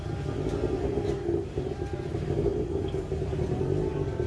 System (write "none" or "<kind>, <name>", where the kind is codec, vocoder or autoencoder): none